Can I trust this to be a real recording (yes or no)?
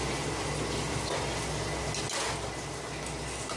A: yes